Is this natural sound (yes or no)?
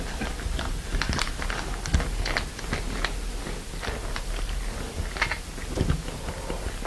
yes